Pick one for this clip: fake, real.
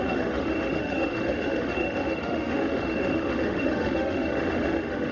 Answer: fake